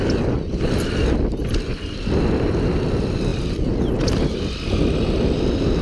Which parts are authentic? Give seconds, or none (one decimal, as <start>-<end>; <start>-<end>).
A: 0.0-5.8

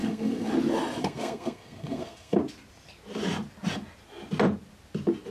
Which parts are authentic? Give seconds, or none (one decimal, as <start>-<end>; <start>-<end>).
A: 0.5-1.0; 2.4-5.3

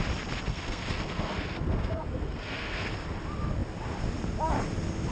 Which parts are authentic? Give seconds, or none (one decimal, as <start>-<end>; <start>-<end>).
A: 0.0-0.5; 2.9-5.1

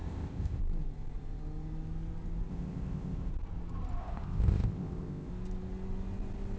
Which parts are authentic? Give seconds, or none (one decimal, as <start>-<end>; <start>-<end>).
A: 0.6-2.5; 3.3-4.0; 5.3-6.6

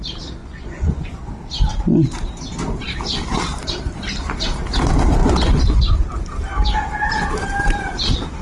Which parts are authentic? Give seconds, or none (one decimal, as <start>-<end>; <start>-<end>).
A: 0.0-0.4; 1.2-5.2; 5.8-8.4

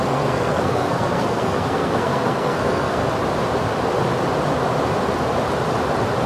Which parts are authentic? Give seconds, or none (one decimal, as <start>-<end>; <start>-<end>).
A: 3.0-6.3